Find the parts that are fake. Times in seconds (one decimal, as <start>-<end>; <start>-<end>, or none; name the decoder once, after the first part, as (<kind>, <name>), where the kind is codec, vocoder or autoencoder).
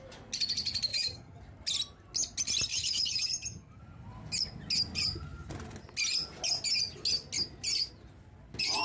0.9-1.4 (vocoder, HiFi-GAN); 2.7-3.8